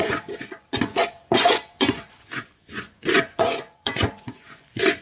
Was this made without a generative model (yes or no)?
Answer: no